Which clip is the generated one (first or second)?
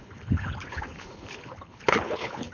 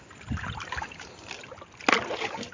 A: first